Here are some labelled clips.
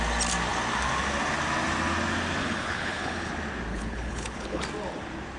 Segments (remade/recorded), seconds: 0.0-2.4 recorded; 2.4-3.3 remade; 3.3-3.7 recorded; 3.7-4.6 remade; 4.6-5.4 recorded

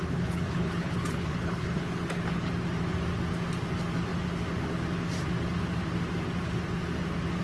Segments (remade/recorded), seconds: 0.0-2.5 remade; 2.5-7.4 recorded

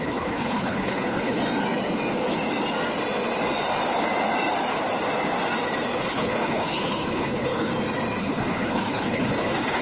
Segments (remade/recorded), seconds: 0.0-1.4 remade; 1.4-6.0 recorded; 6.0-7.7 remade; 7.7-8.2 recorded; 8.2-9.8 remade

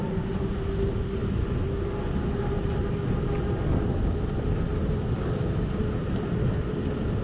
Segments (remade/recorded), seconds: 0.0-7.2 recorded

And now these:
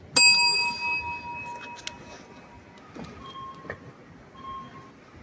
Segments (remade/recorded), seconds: 0.0-5.2 recorded

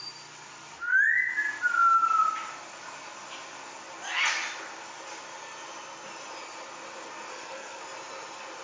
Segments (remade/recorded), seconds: 0.0-7.3 recorded; 7.3-7.8 remade; 7.8-8.6 recorded